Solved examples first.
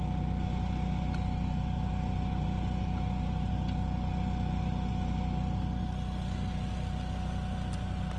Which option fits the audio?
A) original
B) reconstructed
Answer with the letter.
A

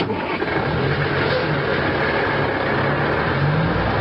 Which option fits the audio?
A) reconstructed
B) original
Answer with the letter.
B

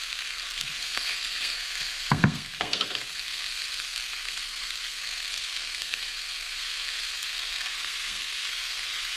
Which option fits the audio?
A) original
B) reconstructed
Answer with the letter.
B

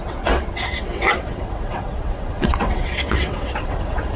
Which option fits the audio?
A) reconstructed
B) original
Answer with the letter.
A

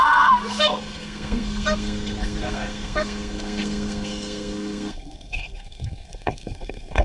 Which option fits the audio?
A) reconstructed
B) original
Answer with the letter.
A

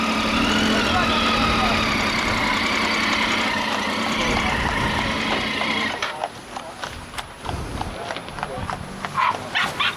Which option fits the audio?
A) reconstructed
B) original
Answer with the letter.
B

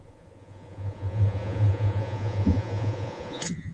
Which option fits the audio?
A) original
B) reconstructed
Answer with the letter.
B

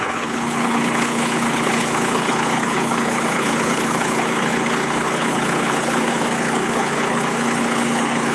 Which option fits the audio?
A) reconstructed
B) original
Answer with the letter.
A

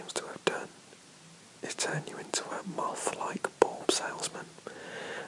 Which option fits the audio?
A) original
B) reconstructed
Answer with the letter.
A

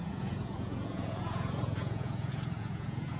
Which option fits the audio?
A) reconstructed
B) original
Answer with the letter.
A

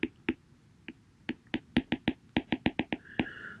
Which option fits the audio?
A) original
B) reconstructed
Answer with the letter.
A